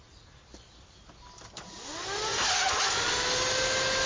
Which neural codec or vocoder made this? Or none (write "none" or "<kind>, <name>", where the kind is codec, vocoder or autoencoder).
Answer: none